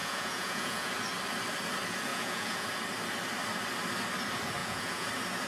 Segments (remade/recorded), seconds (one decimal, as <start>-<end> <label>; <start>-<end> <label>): 0.0-0.9 remade; 0.9-2.1 recorded; 2.1-2.7 remade; 2.7-4.6 recorded; 4.6-5.1 remade; 5.1-5.5 recorded